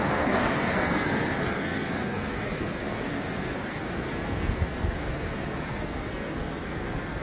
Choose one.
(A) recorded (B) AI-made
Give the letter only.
B